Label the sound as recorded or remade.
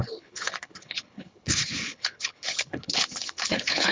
remade